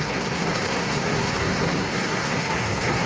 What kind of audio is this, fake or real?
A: fake